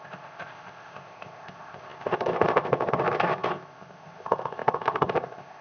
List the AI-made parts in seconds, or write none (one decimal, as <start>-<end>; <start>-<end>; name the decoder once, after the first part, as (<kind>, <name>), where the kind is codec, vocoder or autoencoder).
0.0-5.6 (codec, ZipCodec)